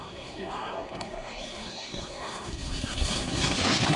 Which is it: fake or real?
fake